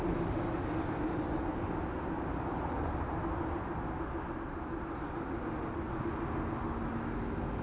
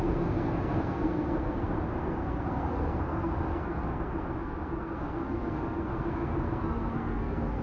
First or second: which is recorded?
first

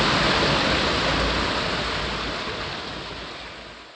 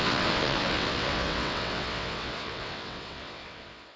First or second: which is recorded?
first